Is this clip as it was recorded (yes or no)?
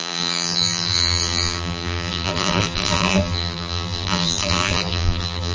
no